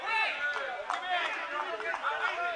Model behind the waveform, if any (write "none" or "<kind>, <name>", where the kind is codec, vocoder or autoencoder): none